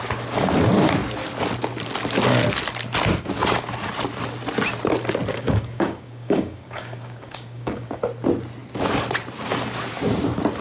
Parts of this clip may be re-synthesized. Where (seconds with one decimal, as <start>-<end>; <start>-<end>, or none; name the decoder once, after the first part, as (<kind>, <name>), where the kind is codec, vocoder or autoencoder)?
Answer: 5.3-8.0 (codec, DAC)